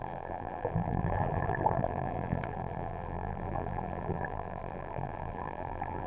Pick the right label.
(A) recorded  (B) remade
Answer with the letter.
B